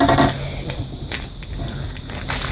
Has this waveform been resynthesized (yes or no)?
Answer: no